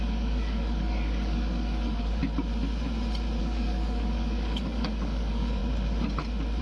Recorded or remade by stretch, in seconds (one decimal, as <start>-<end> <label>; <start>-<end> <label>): 0.0-2.2 remade; 2.2-3.4 recorded; 3.4-5.6 remade; 5.6-6.6 recorded